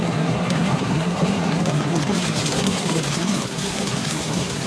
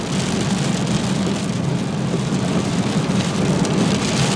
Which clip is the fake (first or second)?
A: first